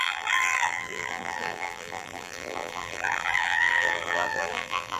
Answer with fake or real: fake